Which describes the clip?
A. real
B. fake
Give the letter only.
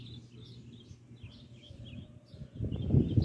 A